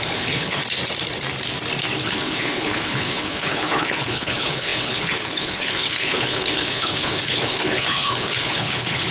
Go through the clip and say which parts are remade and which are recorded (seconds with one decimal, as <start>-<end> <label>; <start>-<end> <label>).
0.0-0.6 remade; 0.6-2.0 recorded; 2.0-9.1 remade